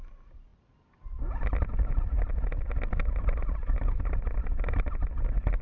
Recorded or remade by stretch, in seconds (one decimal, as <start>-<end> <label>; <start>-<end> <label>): 0.0-5.6 recorded